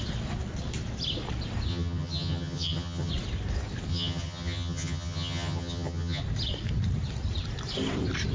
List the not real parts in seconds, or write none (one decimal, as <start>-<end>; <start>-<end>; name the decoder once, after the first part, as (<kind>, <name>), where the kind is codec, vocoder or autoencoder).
1.7-3.1 (vocoder, HiFi-GAN); 3.9-6.2